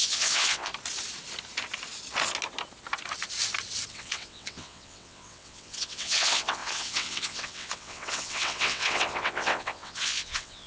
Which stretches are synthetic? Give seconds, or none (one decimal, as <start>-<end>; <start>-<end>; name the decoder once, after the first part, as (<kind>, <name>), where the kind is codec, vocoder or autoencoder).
0.0-0.7 (vocoder, WaveNeXt); 3.9-10.7